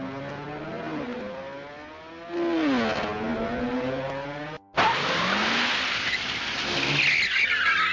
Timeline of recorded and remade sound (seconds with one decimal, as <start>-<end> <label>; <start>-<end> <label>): 0.0-7.9 recorded